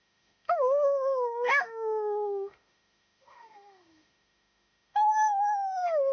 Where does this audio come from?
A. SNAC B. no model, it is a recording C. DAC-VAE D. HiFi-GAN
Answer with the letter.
C